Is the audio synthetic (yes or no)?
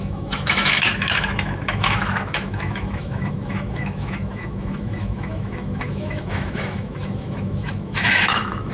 yes